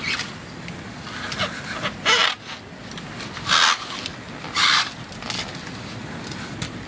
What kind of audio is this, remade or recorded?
recorded